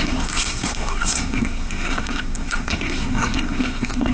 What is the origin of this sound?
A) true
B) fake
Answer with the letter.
B